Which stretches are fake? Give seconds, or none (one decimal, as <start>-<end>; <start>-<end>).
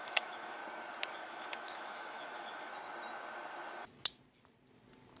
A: 0.0-0.6; 1.1-2.7